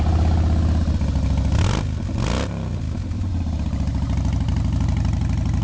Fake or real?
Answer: real